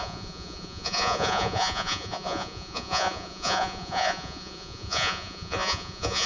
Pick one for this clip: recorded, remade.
remade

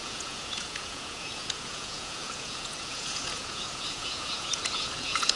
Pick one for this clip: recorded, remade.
remade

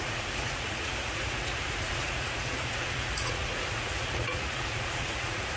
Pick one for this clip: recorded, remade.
remade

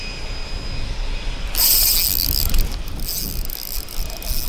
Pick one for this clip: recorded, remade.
recorded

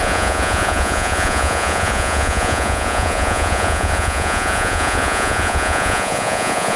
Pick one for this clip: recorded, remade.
remade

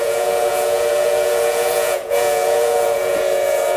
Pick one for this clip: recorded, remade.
remade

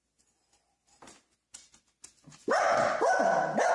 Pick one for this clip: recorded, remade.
recorded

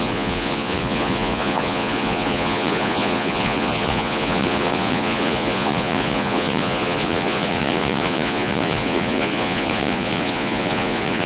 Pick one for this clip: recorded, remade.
remade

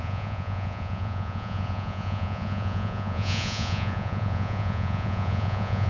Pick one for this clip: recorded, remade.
remade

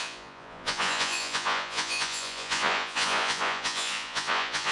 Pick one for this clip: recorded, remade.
remade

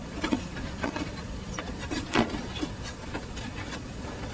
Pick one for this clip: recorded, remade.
remade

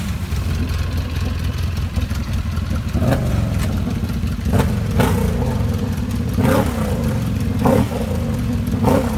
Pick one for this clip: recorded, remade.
recorded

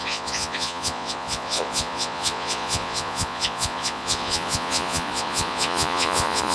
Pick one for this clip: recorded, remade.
remade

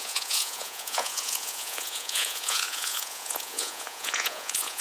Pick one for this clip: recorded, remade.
remade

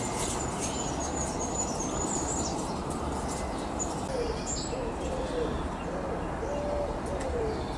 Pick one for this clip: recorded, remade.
recorded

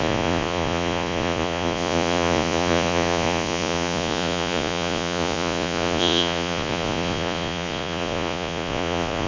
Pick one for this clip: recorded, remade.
remade